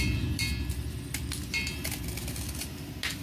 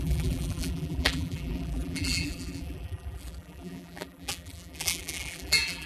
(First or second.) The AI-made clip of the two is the second